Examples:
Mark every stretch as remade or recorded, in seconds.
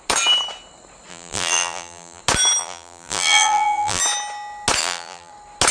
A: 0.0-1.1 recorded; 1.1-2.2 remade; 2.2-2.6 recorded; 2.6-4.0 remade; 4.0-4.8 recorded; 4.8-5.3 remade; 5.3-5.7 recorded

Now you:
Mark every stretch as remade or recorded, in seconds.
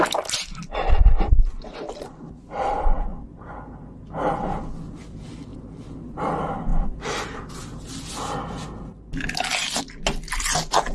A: 0.0-10.9 recorded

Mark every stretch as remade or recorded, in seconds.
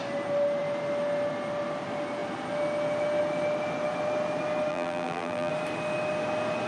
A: 0.0-4.7 recorded; 4.7-5.5 remade; 5.5-6.7 recorded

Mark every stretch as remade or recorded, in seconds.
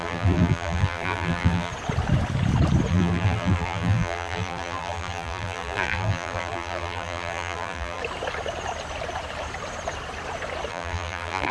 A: 0.0-1.7 remade; 1.7-2.9 recorded; 2.9-8.0 remade; 8.0-10.7 recorded; 10.7-11.5 remade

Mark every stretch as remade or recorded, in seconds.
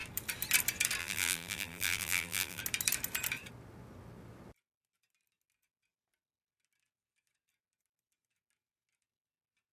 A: 0.0-1.0 recorded; 1.0-2.6 remade; 2.6-9.7 recorded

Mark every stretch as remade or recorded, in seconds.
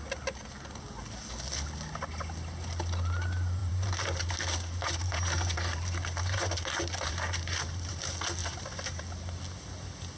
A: 0.0-3.6 recorded; 3.6-8.0 remade; 8.0-8.4 recorded; 8.4-9.0 remade; 9.0-10.2 recorded